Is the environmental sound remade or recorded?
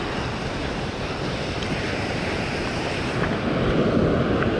recorded